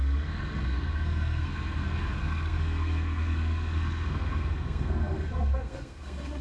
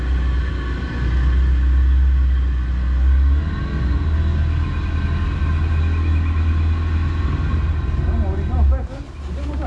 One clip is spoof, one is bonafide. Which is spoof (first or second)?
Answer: first